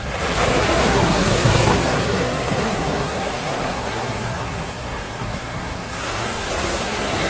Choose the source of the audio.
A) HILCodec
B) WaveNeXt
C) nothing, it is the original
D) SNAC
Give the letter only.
D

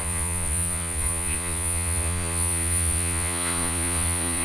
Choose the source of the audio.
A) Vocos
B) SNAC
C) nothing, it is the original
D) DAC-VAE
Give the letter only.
A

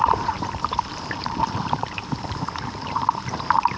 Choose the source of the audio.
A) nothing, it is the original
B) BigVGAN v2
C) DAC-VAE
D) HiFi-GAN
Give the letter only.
B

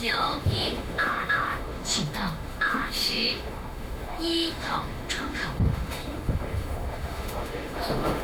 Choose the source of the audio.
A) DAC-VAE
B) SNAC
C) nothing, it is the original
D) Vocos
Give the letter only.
A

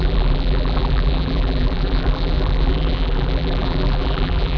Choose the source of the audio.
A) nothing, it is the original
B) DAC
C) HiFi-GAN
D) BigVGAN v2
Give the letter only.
D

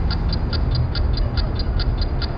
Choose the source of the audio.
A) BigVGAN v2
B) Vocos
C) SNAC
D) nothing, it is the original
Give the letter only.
D